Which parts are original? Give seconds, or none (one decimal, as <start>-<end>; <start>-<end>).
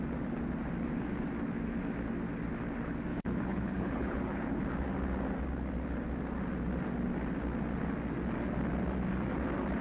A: 0.0-3.1; 4.6-9.8